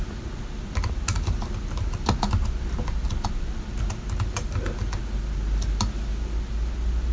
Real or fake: real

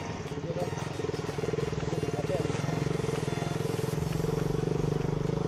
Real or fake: real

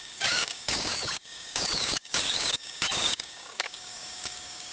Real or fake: fake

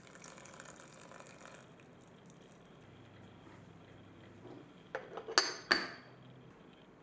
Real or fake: real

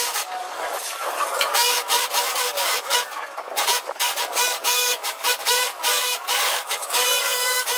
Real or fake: fake